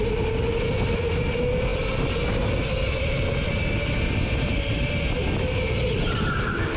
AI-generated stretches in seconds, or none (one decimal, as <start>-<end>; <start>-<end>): none